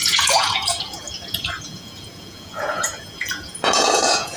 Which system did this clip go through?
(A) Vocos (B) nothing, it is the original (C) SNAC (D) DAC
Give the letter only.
A